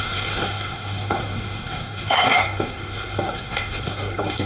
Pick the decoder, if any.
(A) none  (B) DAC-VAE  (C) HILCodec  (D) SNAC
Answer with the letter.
D